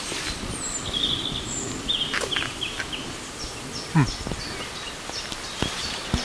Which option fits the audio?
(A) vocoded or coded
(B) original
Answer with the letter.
B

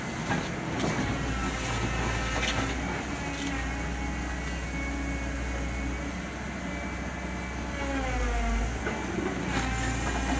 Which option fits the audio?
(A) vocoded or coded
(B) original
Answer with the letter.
B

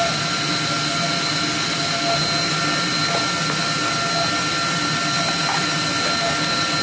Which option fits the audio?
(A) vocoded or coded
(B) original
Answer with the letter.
B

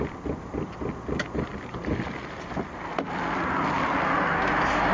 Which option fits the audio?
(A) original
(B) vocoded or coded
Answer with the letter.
A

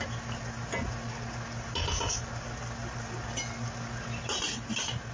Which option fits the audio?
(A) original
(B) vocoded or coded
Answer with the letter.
A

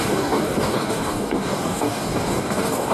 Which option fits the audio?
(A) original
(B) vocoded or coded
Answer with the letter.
B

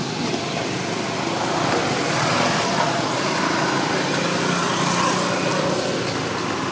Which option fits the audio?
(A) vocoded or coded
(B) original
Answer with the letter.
B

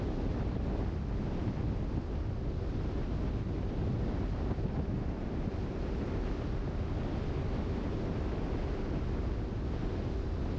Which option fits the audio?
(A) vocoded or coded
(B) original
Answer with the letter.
B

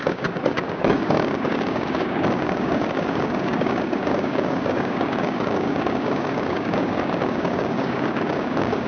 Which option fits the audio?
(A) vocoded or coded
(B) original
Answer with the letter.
A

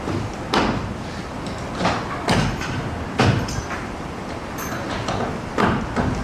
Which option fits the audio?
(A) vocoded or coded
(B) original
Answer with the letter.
B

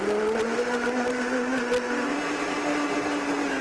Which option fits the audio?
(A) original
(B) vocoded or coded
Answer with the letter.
A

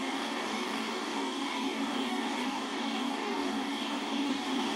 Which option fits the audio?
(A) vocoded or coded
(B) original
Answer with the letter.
A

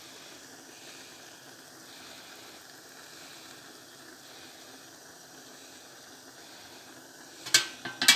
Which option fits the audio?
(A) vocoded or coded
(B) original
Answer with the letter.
B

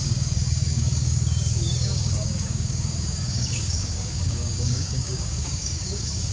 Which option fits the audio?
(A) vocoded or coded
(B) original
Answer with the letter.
A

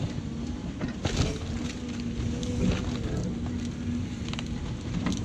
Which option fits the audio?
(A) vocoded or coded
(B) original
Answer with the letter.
B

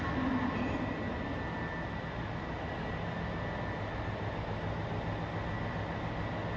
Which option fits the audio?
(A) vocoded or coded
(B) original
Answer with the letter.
B